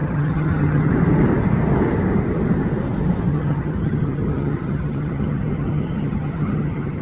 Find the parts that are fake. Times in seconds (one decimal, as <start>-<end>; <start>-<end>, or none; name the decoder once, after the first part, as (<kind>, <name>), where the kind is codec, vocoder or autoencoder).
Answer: 0.0-0.9 (vocoder, HiFi-GAN); 3.3-7.0

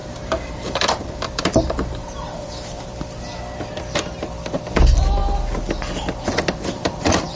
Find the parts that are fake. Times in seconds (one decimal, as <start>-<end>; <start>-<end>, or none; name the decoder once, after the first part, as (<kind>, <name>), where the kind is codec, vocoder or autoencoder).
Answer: 0.0-5.2 (vocoder, BigVGAN v2); 6.6-7.4